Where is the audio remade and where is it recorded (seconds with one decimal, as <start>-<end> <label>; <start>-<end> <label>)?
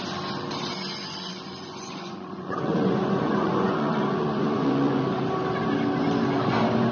0.0-0.9 recorded; 0.9-5.0 remade; 5.0-6.9 recorded